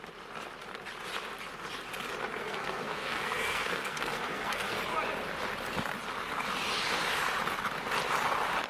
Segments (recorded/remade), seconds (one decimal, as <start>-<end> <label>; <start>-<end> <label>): 0.0-2.4 recorded; 2.4-4.8 remade; 4.8-8.7 recorded

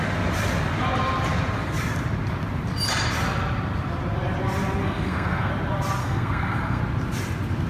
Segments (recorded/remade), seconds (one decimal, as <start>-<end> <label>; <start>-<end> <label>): 0.0-4.8 recorded; 4.8-5.5 remade; 5.5-6.0 recorded; 6.0-6.8 remade; 6.8-7.7 recorded

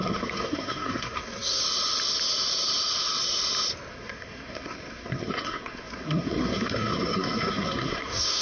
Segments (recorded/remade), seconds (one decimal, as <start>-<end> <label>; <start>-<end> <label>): 0.0-1.6 remade; 1.6-3.9 recorded; 3.9-8.4 remade

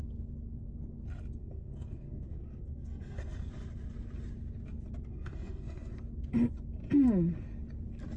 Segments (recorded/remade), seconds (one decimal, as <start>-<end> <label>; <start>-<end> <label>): 0.0-1.4 recorded; 1.4-3.5 remade; 3.5-5.1 recorded; 5.1-6.0 remade; 6.0-8.2 recorded

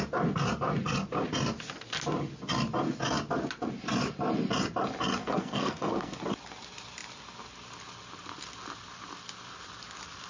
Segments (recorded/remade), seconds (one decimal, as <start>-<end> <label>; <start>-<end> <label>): 0.0-5.2 recorded; 5.2-6.2 remade; 6.2-10.3 recorded